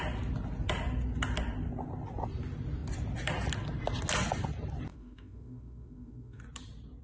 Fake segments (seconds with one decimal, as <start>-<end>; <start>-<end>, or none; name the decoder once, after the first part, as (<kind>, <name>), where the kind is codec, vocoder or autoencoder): 4.9-6.4 (autoencoder, DAC-VAE)

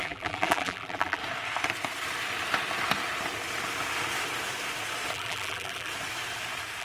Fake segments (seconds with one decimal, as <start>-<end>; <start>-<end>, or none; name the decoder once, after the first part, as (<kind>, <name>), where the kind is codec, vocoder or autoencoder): 0.0-1.2 (vocoder, BigVGAN v2); 5.1-5.9

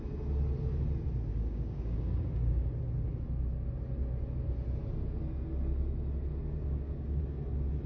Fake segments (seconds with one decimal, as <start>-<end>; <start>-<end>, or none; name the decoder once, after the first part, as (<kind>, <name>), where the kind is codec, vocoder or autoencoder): 1.3-2.7 (codec, DAC); 6.3-7.2

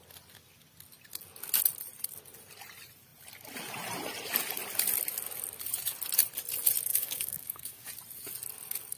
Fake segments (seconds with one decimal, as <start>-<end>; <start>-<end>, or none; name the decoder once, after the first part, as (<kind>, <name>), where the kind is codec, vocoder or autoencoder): 6.9-7.9 (codec, DAC)

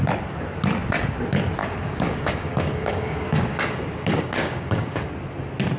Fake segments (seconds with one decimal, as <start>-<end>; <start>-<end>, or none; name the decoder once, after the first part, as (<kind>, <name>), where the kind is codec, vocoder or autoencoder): 1.6-5.1 (codec, DAC)

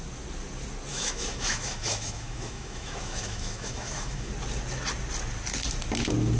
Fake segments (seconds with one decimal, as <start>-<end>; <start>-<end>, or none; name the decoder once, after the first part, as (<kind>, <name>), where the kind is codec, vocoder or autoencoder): 0.9-4.3 (autoencoder, DAC-VAE)

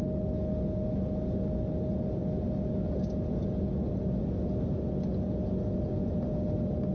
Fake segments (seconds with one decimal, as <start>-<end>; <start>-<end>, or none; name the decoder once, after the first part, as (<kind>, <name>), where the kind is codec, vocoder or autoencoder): none